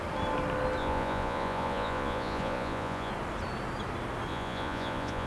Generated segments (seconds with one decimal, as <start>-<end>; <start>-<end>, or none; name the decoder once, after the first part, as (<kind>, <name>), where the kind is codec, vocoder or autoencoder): 0.8-3.1 (vocoder, Vocos); 4.3-5.3